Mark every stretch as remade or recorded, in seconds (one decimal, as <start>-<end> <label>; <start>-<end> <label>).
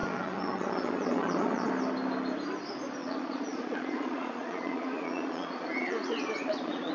0.0-1.7 remade; 1.7-3.0 recorded; 3.0-6.9 remade